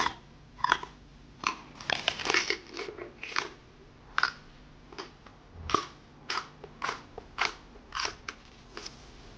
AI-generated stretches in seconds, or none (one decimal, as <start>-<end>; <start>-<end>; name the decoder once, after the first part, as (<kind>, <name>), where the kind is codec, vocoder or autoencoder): 1.1-2.8 (vocoder, BigVGAN v2); 3.6-4.6